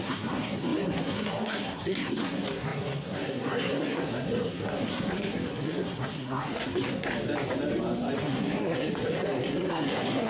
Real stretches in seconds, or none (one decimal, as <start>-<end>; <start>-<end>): 7.1-8.2